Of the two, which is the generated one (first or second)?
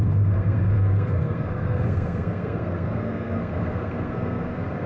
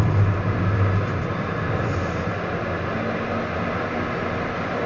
first